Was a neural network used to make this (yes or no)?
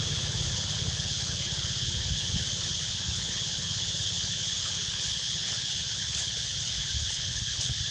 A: yes